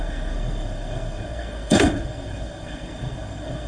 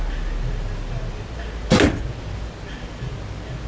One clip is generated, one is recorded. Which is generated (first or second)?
first